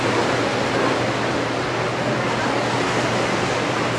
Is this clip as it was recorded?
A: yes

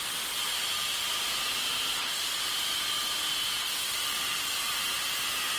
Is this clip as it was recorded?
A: yes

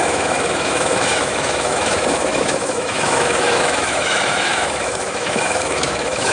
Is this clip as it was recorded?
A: no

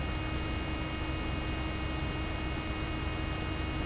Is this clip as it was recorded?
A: yes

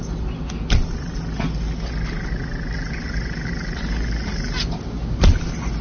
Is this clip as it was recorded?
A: yes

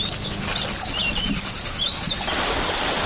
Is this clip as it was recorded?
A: yes